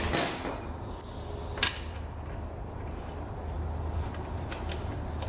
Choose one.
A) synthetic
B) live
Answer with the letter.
B